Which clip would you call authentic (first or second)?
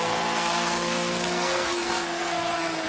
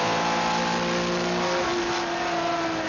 second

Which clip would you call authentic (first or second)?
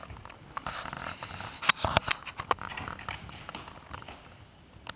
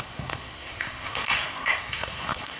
first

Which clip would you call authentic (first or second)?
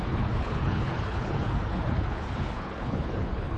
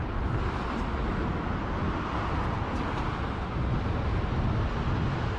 second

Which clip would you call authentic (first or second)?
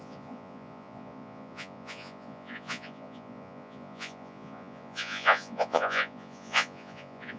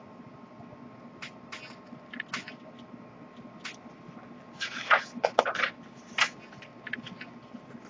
second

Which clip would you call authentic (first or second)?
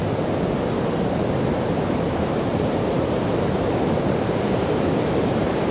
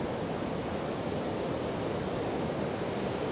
second